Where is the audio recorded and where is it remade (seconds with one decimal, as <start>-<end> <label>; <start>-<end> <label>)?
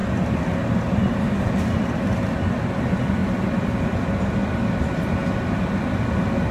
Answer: 0.0-6.5 recorded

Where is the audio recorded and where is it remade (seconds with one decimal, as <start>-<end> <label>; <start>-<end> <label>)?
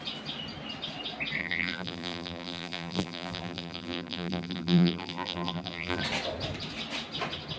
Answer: 0.0-1.4 recorded; 1.4-6.0 remade; 6.0-7.6 recorded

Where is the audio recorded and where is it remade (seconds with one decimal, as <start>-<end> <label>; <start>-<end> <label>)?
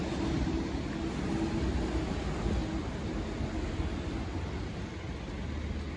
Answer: 0.0-6.0 recorded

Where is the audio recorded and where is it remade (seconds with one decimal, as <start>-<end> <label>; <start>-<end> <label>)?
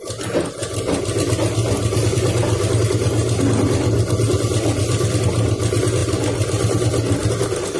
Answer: 0.0-7.8 recorded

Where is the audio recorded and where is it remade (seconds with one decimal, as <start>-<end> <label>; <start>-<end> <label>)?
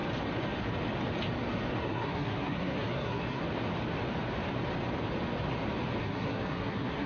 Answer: 0.0-1.8 recorded; 1.8-3.4 remade; 3.4-6.0 recorded; 6.0-7.1 remade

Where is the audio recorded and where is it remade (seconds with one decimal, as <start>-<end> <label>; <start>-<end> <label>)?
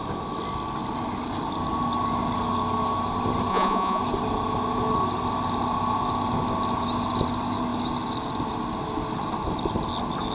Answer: 0.0-3.5 recorded; 3.5-4.0 remade; 4.0-10.3 recorded